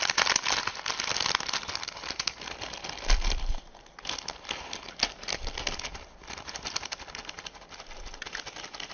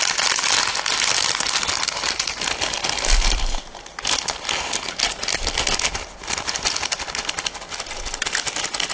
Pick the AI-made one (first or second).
first